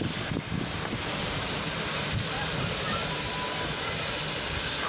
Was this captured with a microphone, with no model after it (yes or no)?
yes